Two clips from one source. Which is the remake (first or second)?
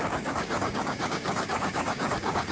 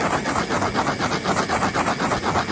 first